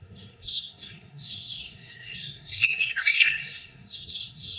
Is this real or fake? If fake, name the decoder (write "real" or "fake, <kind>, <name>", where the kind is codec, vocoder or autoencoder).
fake, codec, SNAC